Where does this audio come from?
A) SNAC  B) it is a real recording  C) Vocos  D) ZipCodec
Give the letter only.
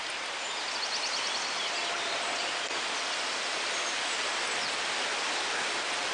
B